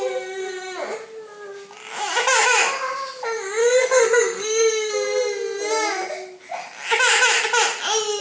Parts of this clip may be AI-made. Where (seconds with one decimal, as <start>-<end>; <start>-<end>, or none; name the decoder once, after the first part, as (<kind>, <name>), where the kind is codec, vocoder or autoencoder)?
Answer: 3.6-4.9 (codec, SNAC)